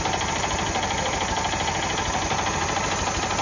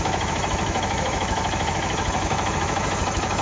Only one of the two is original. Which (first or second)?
first